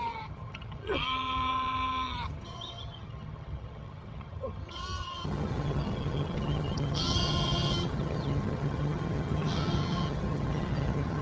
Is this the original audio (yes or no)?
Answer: no